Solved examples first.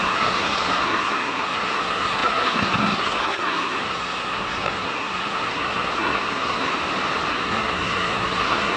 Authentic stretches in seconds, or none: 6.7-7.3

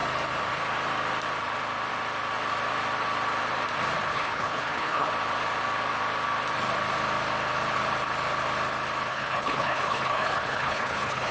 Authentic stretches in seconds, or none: 0.0-4.1; 5.1-9.1

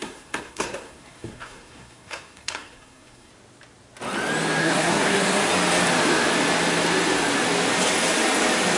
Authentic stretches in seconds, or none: 3.3-4.6; 5.5-8.8

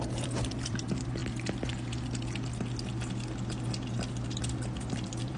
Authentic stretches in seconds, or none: 1.2-4.4

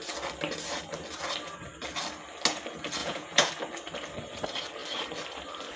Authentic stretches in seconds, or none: 0.0-3.0; 3.5-5.8

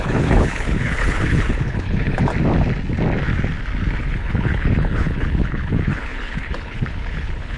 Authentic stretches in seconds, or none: 2.3-4.0

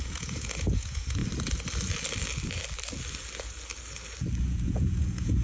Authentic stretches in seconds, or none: 1.2-4.4

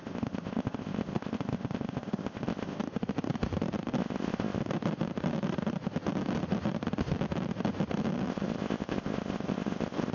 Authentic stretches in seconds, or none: 2.8-4.0; 4.6-8.3